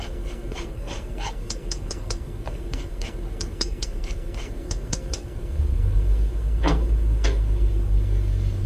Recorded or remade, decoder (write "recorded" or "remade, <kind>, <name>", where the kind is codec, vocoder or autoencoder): remade, codec, SNAC